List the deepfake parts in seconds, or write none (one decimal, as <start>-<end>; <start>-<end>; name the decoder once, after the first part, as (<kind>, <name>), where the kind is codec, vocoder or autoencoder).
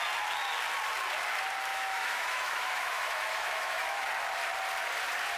1.7-4.0 (autoencoder, DAC-VAE)